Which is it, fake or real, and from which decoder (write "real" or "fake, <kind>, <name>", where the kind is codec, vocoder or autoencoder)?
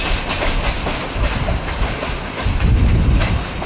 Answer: real